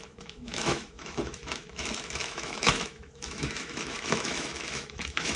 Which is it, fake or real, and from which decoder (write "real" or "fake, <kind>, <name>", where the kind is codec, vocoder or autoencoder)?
fake, autoencoder, DAC-VAE